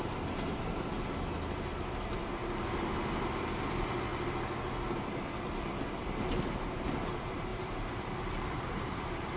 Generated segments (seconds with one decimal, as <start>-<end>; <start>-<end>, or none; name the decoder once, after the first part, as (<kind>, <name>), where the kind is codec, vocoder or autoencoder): 7.5-8.9 (vocoder, BigVGAN v2)